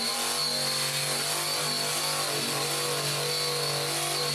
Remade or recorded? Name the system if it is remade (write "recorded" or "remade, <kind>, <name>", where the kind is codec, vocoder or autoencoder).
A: recorded